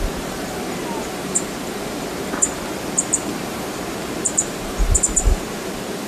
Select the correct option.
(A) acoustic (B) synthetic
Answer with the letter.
B